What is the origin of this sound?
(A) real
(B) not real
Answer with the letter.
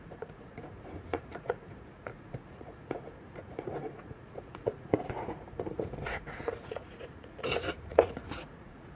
B